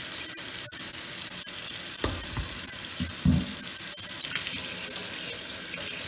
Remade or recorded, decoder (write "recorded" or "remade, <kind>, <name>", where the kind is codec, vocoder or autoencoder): recorded